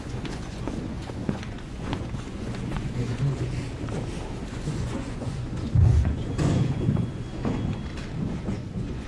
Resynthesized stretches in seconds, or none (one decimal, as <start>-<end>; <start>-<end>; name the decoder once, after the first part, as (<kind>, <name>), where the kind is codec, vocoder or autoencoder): 0.0-3.6 (vocoder, Vocos); 4.5-7.8; 8.5-9.1